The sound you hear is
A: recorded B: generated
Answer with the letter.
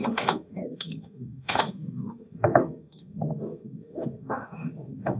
B